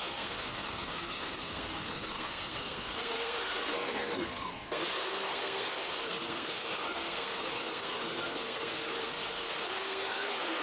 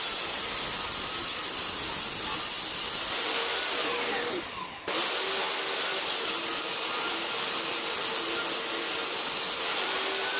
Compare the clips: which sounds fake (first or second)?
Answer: first